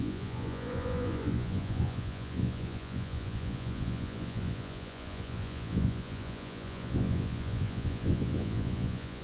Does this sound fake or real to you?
fake